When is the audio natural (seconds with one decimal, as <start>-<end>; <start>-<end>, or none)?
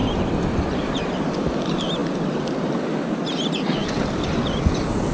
0.0-5.1